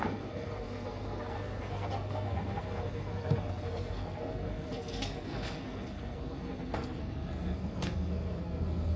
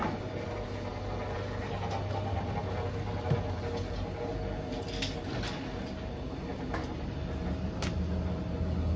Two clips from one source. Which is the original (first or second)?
second